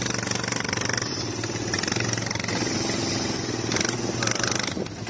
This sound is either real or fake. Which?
real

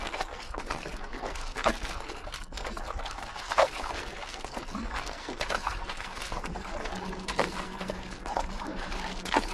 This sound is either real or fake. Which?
fake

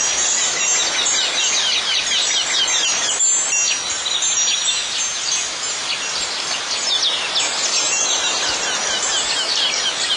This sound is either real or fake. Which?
real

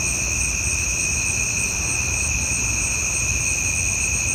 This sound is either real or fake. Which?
real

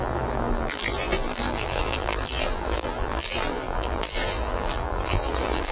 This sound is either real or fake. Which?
fake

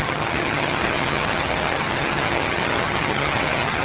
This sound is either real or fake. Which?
fake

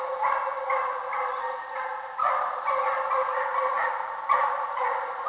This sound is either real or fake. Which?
real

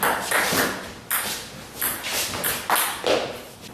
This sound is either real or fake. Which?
real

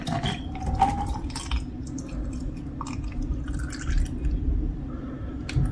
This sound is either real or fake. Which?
real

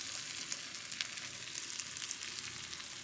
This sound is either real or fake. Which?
real